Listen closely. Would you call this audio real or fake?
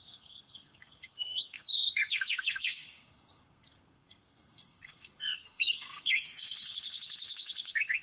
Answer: fake